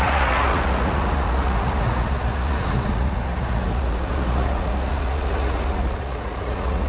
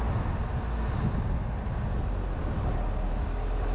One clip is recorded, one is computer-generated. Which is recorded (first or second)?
second